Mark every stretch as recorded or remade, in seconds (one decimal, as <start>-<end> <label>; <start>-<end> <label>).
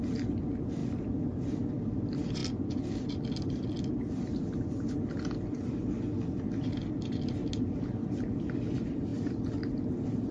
0.0-10.3 recorded